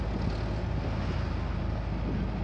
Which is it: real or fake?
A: real